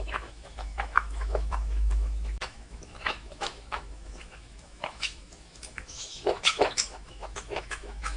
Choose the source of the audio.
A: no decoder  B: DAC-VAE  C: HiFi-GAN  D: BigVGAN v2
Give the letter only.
B